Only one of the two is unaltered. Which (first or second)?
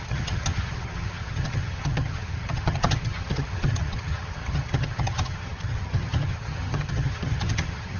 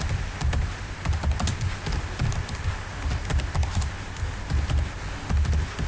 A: second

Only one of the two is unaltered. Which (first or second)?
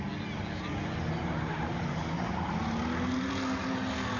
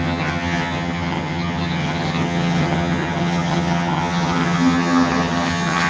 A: first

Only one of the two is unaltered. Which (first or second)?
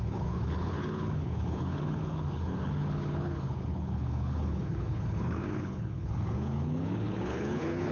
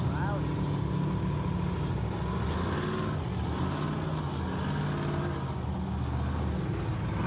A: second